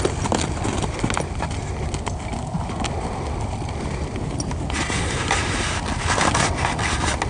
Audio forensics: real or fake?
real